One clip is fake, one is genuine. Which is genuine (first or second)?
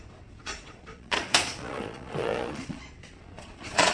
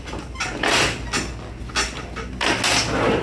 second